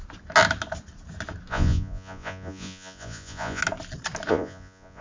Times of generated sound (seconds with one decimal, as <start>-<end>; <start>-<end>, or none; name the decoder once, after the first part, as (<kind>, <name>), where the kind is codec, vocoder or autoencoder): 1.5-3.6 (vocoder, Vocos); 4.3-5.0